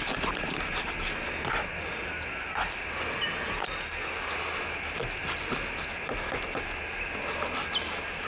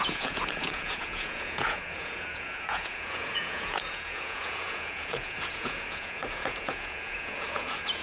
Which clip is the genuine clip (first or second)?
first